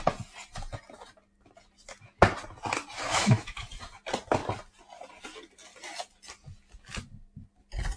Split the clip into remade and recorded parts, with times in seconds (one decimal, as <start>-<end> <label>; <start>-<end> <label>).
0.0-3.1 recorded; 3.1-3.7 remade; 3.7-8.0 recorded